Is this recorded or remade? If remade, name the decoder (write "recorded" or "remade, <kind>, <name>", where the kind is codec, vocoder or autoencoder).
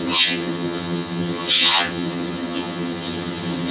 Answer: remade, vocoder, HiFi-GAN